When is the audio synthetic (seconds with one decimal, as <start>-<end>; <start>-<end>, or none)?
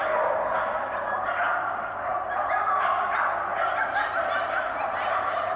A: none